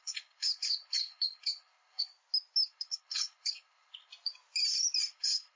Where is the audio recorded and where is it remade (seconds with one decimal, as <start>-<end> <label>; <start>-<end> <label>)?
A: 0.0-2.1 remade; 2.1-2.7 recorded; 2.7-4.1 remade; 4.1-5.1 recorded; 5.1-5.6 remade